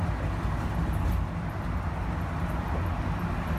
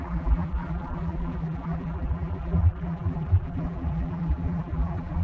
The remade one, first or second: second